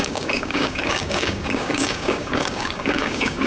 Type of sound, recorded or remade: remade